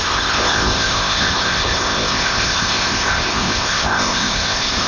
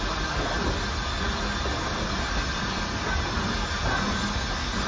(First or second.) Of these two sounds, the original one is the second